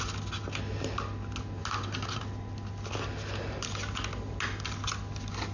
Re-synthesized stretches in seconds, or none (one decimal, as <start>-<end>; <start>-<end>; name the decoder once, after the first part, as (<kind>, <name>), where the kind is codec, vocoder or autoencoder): none